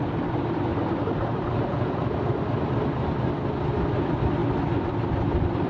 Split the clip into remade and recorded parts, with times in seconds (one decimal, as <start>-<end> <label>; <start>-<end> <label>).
0.0-0.7 recorded; 0.7-3.3 remade; 3.3-5.7 recorded